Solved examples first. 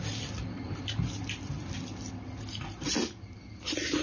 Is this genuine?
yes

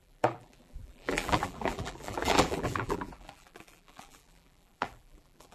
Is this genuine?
no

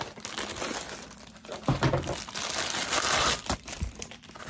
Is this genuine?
yes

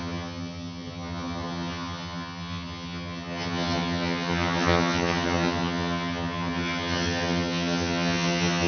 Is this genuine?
no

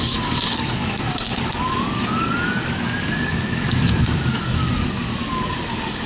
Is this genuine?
no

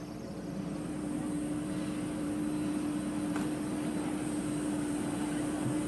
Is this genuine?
yes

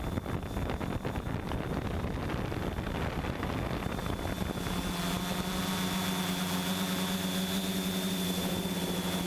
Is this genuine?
yes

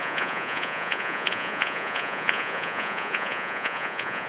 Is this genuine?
no